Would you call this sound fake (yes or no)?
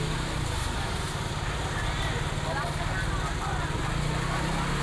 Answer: no